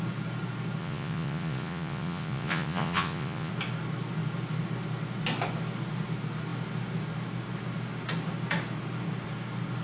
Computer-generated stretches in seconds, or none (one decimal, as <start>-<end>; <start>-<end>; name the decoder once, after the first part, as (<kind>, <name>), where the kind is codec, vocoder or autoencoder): 0.8-3.5 (vocoder, Vocos)